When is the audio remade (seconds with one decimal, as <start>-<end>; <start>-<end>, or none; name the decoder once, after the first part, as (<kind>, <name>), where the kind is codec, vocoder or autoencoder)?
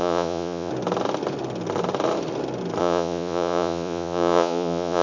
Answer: 0.0-0.7 (vocoder, Vocos); 2.8-5.0